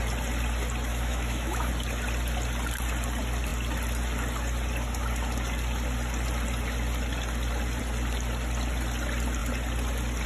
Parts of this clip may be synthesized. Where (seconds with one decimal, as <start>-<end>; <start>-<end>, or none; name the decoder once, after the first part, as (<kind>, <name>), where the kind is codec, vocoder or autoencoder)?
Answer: 0.9-1.7 (autoencoder, DAC-VAE)